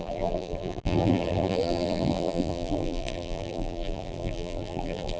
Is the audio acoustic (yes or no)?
no